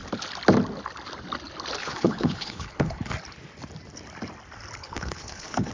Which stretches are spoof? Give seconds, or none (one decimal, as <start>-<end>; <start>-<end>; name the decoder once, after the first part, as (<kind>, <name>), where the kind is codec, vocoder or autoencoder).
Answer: 1.8-3.1 (codec, HILCodec); 4.8-5.7